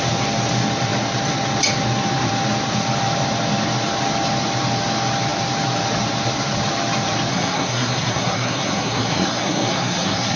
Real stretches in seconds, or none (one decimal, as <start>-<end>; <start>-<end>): 0.0-7.3